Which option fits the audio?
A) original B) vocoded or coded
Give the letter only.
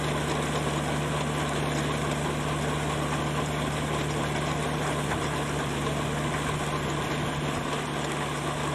A